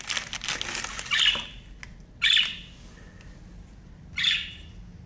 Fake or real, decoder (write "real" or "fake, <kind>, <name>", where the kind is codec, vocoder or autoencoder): real